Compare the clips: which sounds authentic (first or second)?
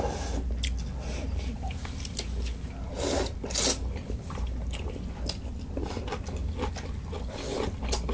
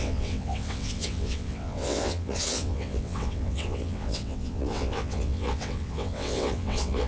first